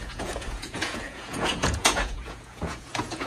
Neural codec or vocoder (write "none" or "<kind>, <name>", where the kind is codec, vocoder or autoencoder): vocoder, Vocos